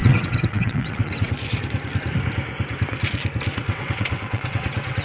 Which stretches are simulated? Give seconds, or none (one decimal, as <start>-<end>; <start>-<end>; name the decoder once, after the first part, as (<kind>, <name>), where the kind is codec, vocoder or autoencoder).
0.0-1.3 (vocoder, WaveNeXt); 3.6-5.0